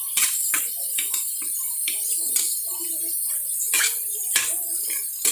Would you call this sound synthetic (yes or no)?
no